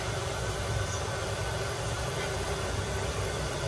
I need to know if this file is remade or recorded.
remade